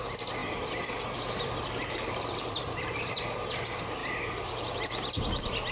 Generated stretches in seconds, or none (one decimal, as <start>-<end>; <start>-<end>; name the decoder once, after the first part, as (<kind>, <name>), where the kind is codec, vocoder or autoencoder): 0.4-3.5 (vocoder, BigVGAN v2)